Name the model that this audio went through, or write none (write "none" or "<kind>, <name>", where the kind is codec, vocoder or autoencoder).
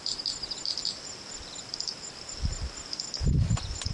none